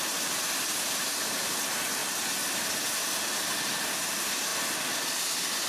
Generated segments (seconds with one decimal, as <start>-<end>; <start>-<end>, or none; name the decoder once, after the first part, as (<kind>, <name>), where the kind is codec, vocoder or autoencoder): none